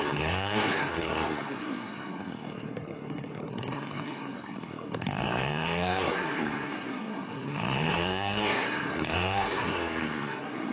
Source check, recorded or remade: remade